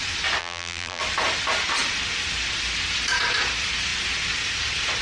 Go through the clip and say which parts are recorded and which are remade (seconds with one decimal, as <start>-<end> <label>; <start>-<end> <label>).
0.0-0.4 recorded; 0.4-1.0 remade; 1.0-5.0 recorded